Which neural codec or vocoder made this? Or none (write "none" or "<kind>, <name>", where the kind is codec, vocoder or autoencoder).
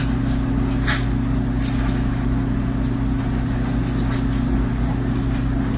none